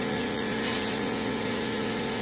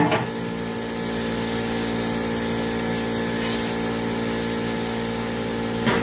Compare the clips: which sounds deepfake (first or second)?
first